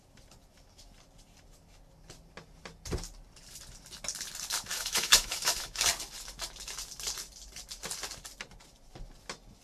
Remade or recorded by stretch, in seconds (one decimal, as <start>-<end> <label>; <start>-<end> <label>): 0.0-4.7 recorded; 4.7-5.8 remade; 5.8-9.6 recorded